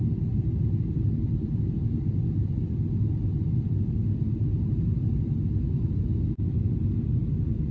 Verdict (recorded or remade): recorded